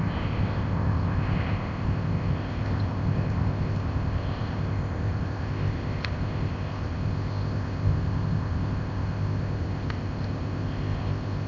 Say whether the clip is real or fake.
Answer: fake